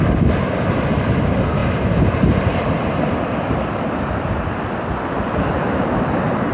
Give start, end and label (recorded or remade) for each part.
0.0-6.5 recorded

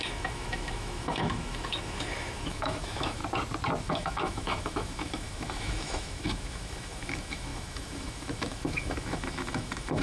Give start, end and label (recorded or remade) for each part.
0.0-3.2 remade; 3.2-3.8 recorded; 3.8-10.0 remade

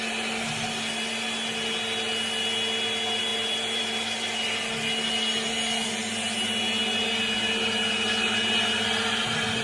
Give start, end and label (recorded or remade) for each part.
0.0-9.6 recorded

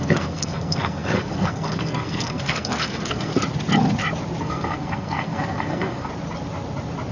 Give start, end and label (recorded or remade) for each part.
0.0-3.3 remade; 3.3-4.4 recorded; 4.4-6.1 remade; 6.1-7.1 recorded

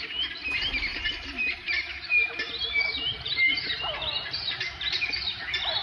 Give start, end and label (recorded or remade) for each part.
0.0-0.9 recorded; 0.9-3.6 remade; 3.6-5.8 recorded

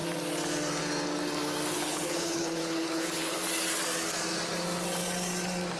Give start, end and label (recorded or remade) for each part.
0.0-1.7 recorded; 1.7-3.4 remade; 3.4-5.8 recorded

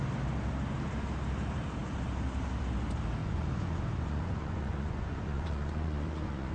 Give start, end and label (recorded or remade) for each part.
0.0-3.2 recorded; 3.2-6.5 remade